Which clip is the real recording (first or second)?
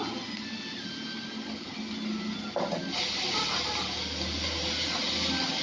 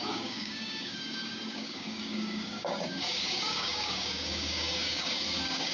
first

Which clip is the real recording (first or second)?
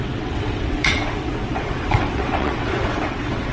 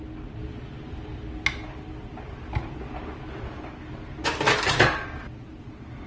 second